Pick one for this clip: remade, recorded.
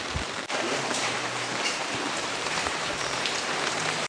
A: remade